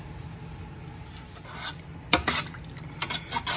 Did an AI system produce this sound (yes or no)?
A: no